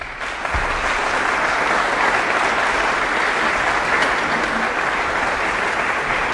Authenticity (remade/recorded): recorded